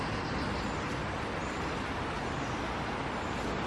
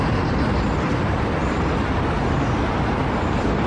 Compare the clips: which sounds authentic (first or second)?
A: first